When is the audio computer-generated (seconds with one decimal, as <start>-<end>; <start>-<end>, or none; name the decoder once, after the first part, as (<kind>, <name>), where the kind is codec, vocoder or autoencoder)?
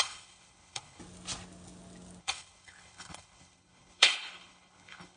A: 0.0-1.0 (codec, HILCodec); 2.2-5.2